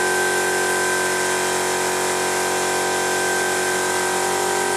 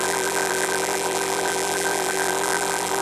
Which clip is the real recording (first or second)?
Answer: first